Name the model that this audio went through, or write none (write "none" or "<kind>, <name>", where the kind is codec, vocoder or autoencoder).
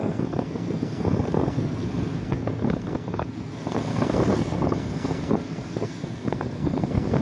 codec, SNAC